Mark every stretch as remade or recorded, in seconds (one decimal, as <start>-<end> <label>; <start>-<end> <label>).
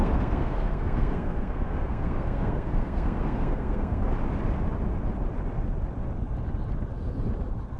0.0-4.0 remade; 4.0-7.8 recorded